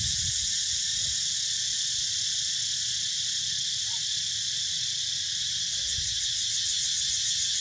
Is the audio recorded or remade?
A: recorded